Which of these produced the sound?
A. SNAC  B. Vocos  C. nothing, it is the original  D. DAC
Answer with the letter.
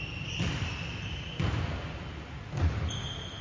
C